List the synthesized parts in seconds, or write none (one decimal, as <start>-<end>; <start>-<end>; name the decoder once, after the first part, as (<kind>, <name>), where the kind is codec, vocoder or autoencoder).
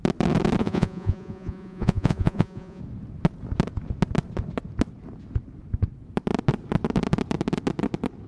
0.6-2.8 (vocoder, Vocos)